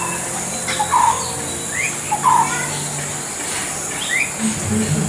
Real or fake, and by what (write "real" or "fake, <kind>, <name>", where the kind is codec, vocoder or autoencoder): real